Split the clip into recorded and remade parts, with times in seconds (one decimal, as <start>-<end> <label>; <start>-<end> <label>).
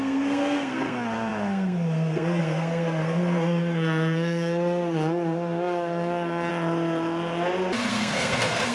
0.0-6.5 remade; 6.5-7.9 recorded; 7.9-8.7 remade